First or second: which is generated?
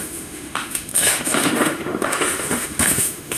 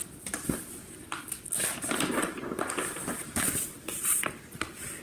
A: first